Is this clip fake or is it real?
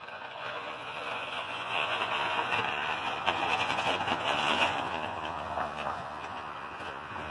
fake